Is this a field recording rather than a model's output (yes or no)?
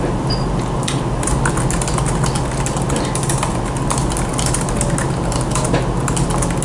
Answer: yes